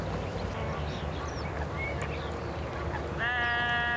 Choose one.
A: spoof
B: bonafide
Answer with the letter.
B